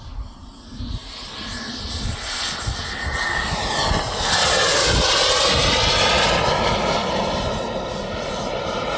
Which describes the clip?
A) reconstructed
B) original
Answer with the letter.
B